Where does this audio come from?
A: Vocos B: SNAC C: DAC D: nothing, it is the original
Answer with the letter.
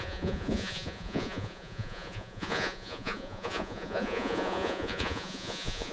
A